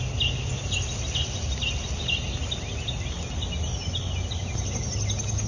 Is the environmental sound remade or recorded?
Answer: recorded